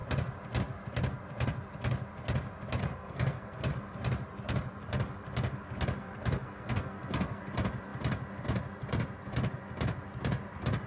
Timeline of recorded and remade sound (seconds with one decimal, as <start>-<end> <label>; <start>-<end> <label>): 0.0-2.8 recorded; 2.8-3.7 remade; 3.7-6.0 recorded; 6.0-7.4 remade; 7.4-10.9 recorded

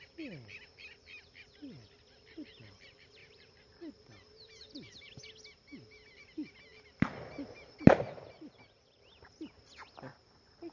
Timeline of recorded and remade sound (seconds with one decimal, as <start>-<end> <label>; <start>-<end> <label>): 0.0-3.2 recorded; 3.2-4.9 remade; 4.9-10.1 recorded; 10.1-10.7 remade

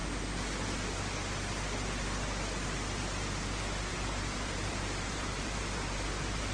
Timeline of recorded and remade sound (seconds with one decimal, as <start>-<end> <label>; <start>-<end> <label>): 0.0-3.9 recorded; 3.9-6.5 remade